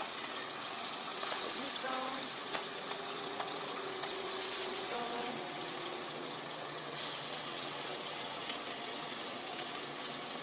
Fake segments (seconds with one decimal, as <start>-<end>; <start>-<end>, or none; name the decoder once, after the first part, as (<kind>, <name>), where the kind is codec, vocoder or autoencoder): 0.0-10.4 (vocoder, WaveNeXt)